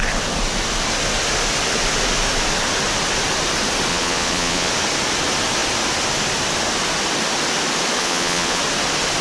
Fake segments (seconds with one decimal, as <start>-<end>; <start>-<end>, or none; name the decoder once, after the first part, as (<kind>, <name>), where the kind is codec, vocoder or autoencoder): 3.9-4.7 (vocoder, Vocos); 8.0-8.6